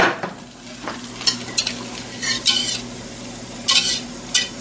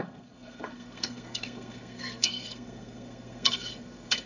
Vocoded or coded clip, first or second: second